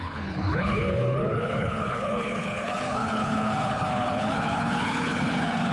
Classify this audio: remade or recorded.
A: remade